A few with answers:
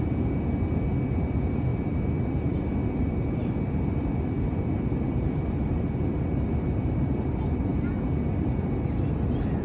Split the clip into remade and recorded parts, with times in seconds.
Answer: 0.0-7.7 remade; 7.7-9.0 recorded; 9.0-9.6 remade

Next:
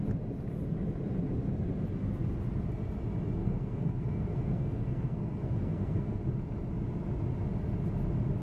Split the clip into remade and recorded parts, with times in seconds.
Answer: 0.0-3.4 recorded; 3.4-6.2 remade; 6.2-8.4 recorded

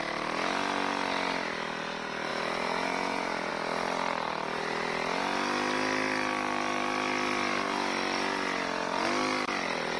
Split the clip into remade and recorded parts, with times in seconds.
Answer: 0.0-2.3 recorded; 2.3-3.5 remade; 3.5-10.0 recorded

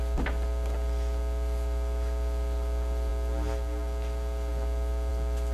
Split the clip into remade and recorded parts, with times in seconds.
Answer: 0.0-5.5 recorded

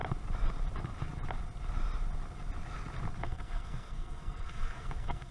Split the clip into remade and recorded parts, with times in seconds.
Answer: 0.0-3.2 recorded; 3.2-5.3 remade

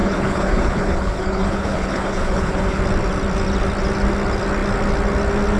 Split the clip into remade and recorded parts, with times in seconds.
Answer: 0.0-2.8 remade; 2.8-5.6 recorded

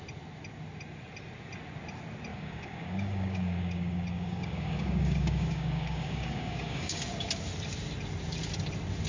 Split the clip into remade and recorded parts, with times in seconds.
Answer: 0.0-2.3 recorded; 2.3-7.0 remade; 7.0-9.1 recorded